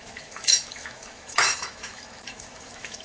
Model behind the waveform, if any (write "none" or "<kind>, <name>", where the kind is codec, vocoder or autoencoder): autoencoder, DAC-VAE